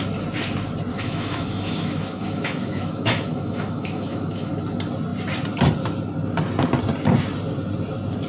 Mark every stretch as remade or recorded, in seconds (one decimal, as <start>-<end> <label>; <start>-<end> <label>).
0.0-0.9 recorded; 0.9-4.5 remade; 4.5-8.3 recorded